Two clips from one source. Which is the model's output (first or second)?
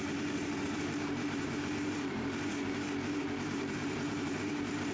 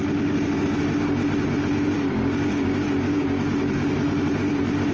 first